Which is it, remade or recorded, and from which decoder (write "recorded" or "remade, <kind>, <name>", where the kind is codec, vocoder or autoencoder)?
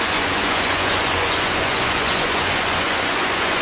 remade, vocoder, Vocos